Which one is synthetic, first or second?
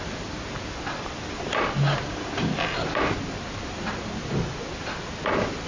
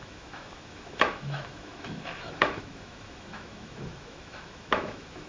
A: second